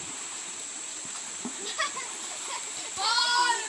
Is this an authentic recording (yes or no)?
no